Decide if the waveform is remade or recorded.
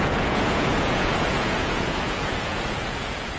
remade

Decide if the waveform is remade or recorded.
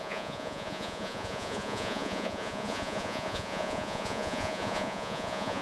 remade